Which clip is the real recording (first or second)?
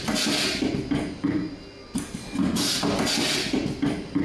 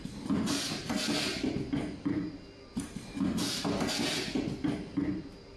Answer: first